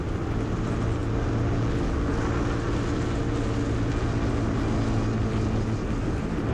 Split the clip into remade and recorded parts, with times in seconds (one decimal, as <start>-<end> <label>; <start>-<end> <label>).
0.0-6.5 recorded